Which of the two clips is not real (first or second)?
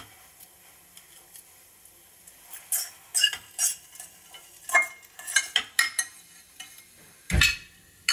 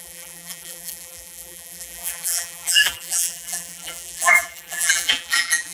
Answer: second